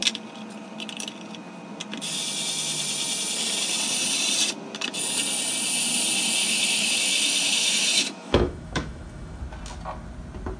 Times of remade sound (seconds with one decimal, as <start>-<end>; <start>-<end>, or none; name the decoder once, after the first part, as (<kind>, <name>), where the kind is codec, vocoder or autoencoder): 6.4-9.4 (autoencoder, DAC-VAE)